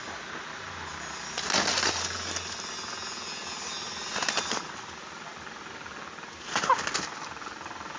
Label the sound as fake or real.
real